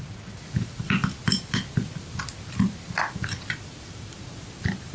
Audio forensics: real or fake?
real